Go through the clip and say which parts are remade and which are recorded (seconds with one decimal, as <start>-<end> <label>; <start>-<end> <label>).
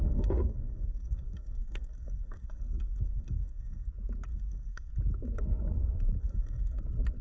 0.0-3.9 remade; 3.9-4.3 recorded; 4.3-4.9 remade; 4.9-6.2 recorded; 6.2-6.8 remade; 6.8-7.2 recorded